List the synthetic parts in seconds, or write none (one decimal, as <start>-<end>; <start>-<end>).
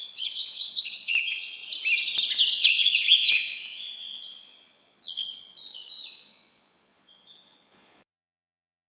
0.0-1.6; 2.5-8.9